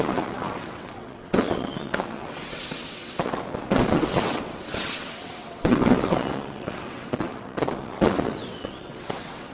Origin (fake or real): fake